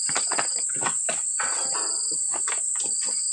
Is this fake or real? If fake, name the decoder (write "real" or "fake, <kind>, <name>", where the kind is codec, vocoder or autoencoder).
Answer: real